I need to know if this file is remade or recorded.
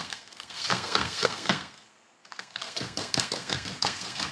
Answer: remade